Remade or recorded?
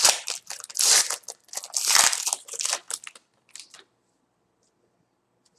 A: recorded